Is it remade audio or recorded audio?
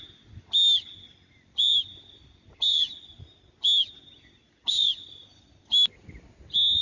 recorded